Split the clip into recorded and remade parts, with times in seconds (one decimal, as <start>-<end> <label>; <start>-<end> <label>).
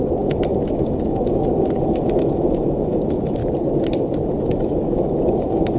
0.0-3.4 remade; 3.4-4.4 recorded; 4.4-5.8 remade